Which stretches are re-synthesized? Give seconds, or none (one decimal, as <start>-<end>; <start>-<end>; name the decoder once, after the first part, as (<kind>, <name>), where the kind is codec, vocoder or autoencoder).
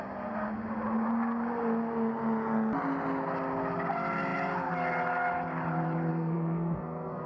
6.1-7.3 (codec, SNAC)